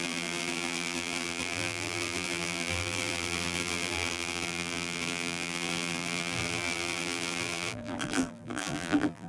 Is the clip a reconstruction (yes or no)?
yes